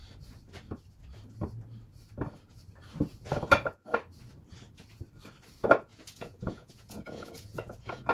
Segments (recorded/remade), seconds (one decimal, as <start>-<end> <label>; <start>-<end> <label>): 0.0-5.9 recorded; 5.9-8.1 remade